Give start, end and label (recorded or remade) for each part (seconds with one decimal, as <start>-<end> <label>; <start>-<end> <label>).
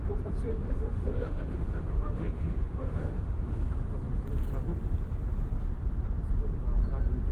0.0-0.5 recorded; 0.5-3.7 remade; 3.7-7.3 recorded